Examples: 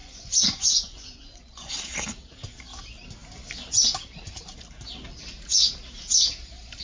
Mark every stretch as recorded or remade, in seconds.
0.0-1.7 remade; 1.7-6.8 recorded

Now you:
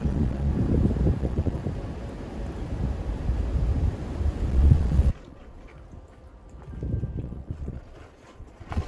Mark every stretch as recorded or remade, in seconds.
0.0-0.5 remade; 0.5-1.2 recorded; 1.2-1.6 remade; 1.6-4.5 recorded; 4.5-5.7 remade; 5.7-7.2 recorded; 7.2-8.9 remade

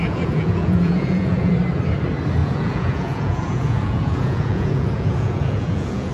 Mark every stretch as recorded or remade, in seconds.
0.0-1.5 remade; 1.5-2.4 recorded; 2.4-6.1 remade

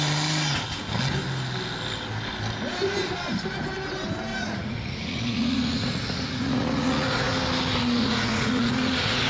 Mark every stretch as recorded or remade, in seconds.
0.0-4.3 recorded; 4.3-7.3 remade; 7.3-8.0 recorded; 8.0-9.3 remade

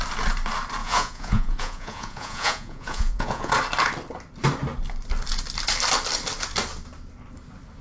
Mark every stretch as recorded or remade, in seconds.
0.0-0.8 recorded; 0.8-3.5 remade; 3.5-7.8 recorded